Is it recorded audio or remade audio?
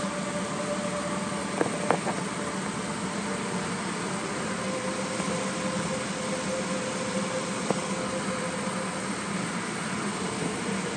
recorded